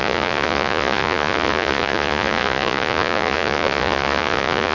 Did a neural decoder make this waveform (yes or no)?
yes